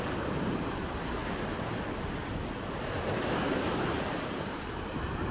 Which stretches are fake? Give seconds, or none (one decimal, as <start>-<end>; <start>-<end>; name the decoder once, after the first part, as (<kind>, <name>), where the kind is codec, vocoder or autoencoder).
0.0-1.2 (vocoder, BigVGAN v2); 3.6-5.3